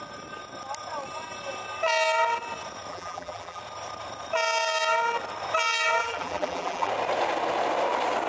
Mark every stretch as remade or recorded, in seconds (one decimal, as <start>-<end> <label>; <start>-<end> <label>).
0.0-2.9 recorded; 2.9-3.6 remade; 3.6-6.0 recorded; 6.0-6.9 remade; 6.9-8.3 recorded